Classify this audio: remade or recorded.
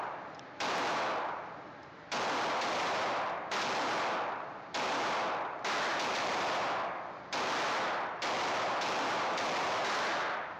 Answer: recorded